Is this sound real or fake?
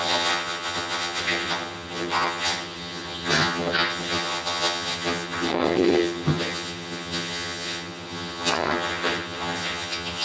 fake